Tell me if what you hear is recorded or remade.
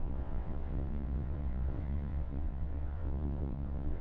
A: remade